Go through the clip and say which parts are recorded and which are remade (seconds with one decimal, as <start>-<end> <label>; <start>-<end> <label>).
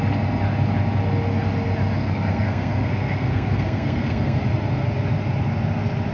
0.0-2.0 recorded; 2.0-4.4 remade; 4.4-6.1 recorded